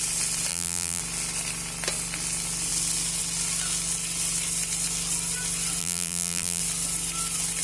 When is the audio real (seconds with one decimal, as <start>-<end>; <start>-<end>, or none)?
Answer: 0.0-0.5; 1.0-5.8; 6.6-7.6